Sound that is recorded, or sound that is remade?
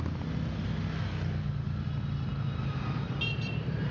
recorded